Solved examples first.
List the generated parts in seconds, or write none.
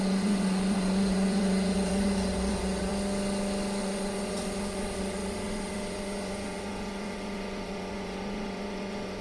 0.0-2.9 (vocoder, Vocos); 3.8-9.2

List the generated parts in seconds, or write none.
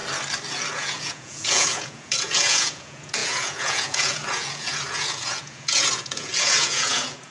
0.7-7.3 (vocoder, Vocos)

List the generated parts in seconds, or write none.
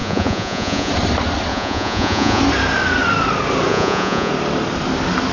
0.0-0.9 (vocoder, Vocos); 1.5-2.4; 3.7-4.3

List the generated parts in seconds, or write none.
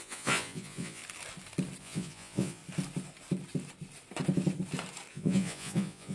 0.0-1.0 (vocoder, Vocos); 1.8-2.6; 5.1-6.1